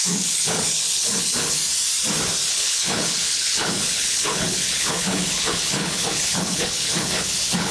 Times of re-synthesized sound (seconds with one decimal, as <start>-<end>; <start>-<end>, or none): 0.0-1.6; 2.5-7.7